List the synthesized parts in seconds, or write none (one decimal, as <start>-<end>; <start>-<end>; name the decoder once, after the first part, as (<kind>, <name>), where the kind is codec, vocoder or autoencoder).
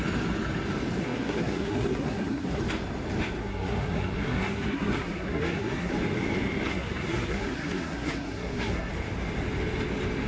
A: 1.0-2.6 (codec, SNAC); 3.4-5.9; 6.7-8.9